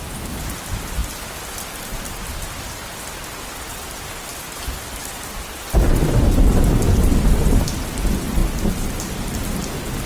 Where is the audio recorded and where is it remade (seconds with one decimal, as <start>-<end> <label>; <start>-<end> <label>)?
0.0-10.1 recorded